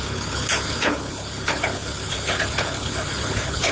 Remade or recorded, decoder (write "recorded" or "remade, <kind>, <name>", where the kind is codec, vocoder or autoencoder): remade, codec, HILCodec